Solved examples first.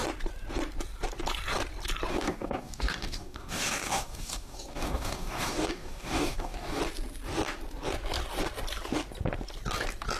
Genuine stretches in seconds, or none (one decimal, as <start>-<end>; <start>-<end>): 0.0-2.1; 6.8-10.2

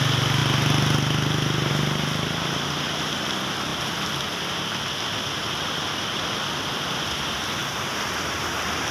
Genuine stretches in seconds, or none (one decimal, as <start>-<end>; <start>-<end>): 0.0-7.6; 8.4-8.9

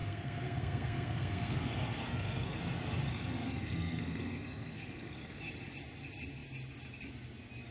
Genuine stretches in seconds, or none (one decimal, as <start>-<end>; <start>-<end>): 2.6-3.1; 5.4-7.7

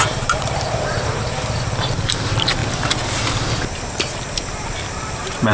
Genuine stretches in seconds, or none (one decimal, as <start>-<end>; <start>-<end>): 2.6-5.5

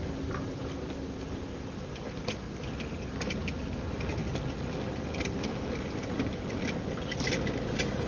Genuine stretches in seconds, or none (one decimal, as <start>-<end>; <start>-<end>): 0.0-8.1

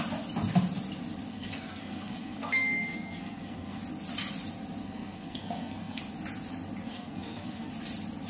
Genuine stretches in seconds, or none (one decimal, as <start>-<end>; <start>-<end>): 0.0-1.3; 3.8-4.8; 6.0-6.9; 7.7-8.3